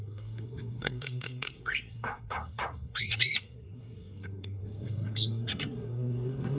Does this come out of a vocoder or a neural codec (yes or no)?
yes